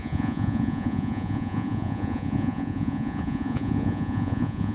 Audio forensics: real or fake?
fake